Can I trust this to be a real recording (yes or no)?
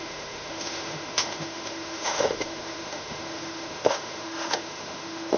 no